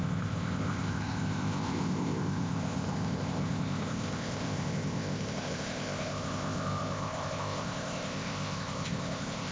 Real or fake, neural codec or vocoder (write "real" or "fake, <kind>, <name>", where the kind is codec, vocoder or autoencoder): fake, codec, ZipCodec